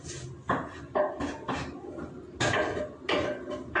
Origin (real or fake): real